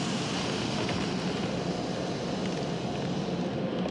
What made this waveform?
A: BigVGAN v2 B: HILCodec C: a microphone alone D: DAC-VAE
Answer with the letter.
C